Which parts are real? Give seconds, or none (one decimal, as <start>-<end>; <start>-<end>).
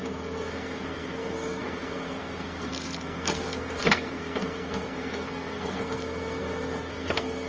none